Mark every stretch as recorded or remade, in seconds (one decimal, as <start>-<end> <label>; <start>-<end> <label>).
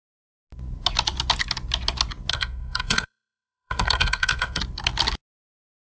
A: 0.0-2.3 recorded; 2.3-4.6 remade; 4.6-5.9 recorded